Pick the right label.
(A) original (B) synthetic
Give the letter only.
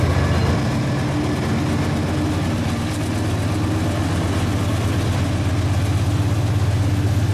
A